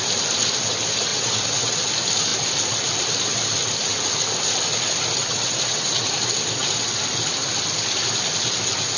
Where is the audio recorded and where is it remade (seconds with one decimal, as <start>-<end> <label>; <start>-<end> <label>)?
0.0-1.1 recorded; 1.1-1.8 remade; 1.8-5.2 recorded; 5.2-6.1 remade; 6.1-9.0 recorded